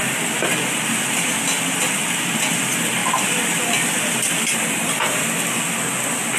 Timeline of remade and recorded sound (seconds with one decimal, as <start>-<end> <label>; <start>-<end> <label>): 0.0-6.4 recorded